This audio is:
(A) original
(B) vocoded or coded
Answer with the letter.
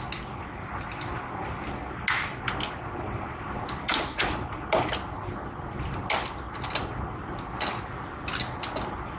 A